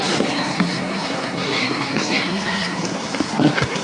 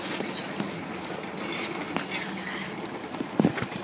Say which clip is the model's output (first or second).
first